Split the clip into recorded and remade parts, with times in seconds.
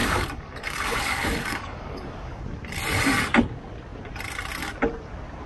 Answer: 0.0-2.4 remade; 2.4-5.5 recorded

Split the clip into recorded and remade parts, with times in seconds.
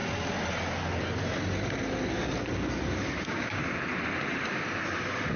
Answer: 0.0-3.2 recorded; 3.2-3.6 remade; 3.6-5.4 recorded